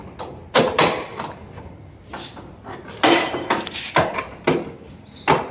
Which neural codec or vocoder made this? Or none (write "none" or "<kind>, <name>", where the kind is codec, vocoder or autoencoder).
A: none